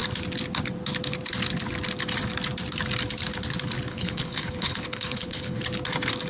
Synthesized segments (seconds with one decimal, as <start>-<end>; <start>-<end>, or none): 3.9-5.6

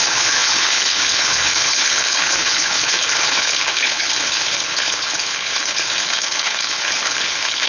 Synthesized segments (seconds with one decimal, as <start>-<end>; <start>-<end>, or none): 0.0-7.7

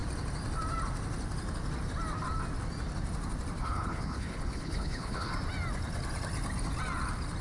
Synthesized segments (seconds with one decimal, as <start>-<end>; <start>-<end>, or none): 3.6-5.3

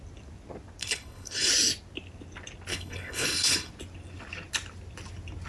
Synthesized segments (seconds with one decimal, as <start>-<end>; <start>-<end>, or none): 0.8-1.5; 2.7-3.7

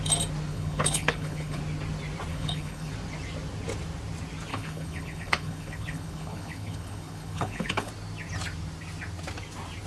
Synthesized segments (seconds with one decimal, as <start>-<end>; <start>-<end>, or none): 0.5-1.6; 2.3-2.9; 4.5-7.9

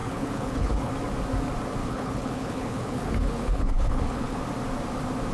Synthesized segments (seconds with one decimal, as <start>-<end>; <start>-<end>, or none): 0.0-0.9; 1.8-4.4